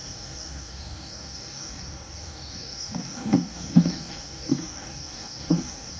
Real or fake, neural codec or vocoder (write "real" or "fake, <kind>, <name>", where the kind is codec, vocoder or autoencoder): fake, codec, DAC